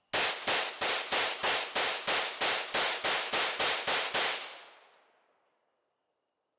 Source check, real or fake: real